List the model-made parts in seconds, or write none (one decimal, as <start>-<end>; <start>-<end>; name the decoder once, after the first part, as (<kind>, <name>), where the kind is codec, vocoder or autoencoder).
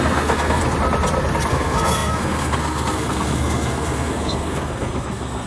0.0-0.6 (codec, SNAC); 1.5-5.5